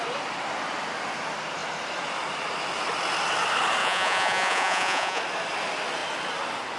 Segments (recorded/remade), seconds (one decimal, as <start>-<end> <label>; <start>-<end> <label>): 0.0-3.8 recorded; 3.8-5.2 remade; 5.2-6.8 recorded